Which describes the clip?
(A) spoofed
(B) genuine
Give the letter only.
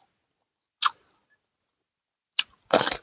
B